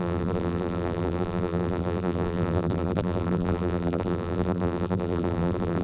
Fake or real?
fake